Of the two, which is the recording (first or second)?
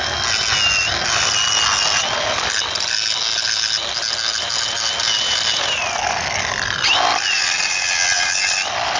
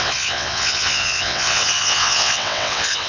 first